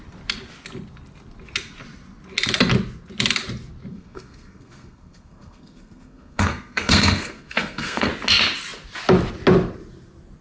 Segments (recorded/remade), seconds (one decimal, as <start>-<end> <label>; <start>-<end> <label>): 0.0-3.9 recorded; 3.9-8.1 remade; 8.1-10.4 recorded

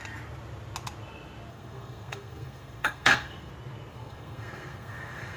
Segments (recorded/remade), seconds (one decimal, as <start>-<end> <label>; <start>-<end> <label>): 0.0-1.5 recorded; 1.5-3.5 remade; 3.5-3.9 recorded; 3.9-5.4 remade

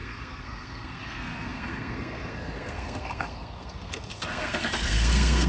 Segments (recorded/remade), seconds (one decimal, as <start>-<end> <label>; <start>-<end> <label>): 0.0-5.5 remade

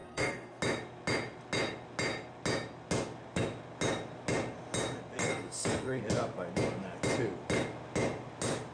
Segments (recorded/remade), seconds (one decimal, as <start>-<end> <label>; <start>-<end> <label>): 0.0-0.6 remade; 0.6-5.2 recorded; 5.2-6.0 remade; 6.0-8.7 recorded

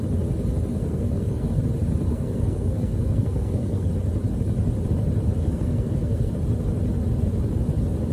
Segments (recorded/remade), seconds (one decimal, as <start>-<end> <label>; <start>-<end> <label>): 0.0-0.7 recorded; 0.7-1.6 remade; 1.6-2.1 recorded; 2.1-3.9 remade; 3.9-5.4 recorded; 5.4-6.3 remade; 6.3-8.1 recorded

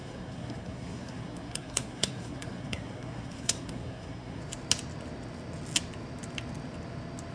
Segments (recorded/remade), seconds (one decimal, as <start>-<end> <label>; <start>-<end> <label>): 0.0-4.4 remade; 4.4-7.3 recorded